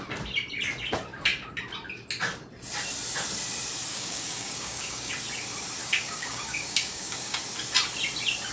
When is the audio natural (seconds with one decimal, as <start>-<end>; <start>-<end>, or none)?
0.0-3.9; 5.1-5.8; 7.4-8.5